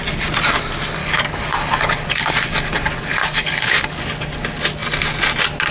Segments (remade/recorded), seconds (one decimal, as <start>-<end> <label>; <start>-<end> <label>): 0.0-1.0 recorded; 1.0-2.3 remade; 2.3-3.2 recorded; 3.2-4.0 remade; 4.0-5.7 recorded